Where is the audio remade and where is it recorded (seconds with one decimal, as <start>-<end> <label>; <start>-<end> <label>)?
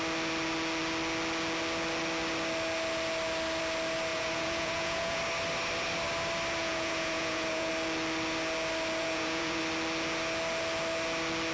0.0-4.1 recorded; 4.1-5.2 remade; 5.2-6.6 recorded; 6.6-7.7 remade; 7.7-9.0 recorded; 9.0-9.6 remade; 9.6-11.5 recorded